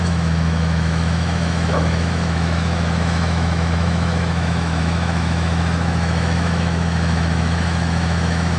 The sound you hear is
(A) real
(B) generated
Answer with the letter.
B